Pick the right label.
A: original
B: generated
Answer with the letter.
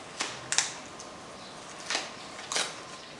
A